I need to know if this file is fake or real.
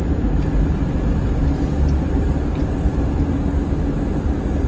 real